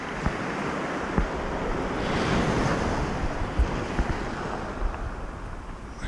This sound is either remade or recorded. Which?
recorded